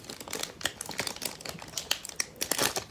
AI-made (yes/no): no